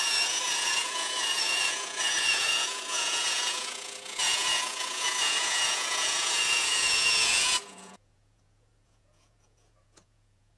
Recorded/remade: remade